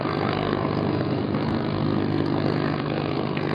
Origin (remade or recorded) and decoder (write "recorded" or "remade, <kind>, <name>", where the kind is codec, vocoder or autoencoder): remade, codec, SNAC